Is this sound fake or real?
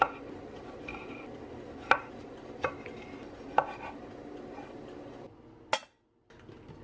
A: real